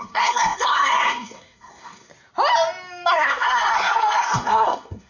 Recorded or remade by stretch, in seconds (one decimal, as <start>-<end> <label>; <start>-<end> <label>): 0.0-2.1 remade; 2.1-3.1 recorded; 3.1-5.1 remade